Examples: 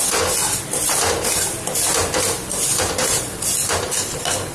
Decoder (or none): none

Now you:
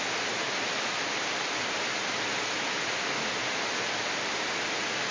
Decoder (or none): none